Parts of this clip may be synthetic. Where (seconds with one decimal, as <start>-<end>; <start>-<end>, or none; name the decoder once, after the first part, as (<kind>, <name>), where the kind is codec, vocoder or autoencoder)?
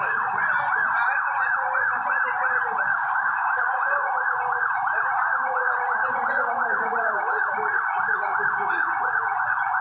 2.9-3.6 (codec, DAC)